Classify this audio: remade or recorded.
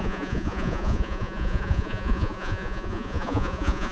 remade